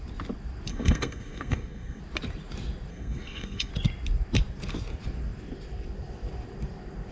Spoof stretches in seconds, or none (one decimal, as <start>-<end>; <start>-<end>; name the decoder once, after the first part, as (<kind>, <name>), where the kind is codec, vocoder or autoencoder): 0.7-2.0 (codec, SNAC); 2.9-3.7